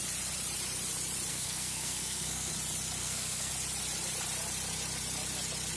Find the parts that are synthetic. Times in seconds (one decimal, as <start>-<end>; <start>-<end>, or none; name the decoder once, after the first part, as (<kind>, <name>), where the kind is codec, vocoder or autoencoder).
1.3-2.5 (codec, SNAC); 3.0-3.5